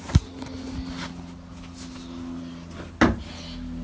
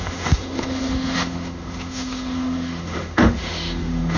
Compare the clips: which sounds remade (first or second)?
second